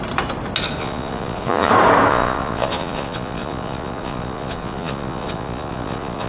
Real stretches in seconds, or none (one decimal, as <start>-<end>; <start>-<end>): 0.0-0.8; 1.7-2.1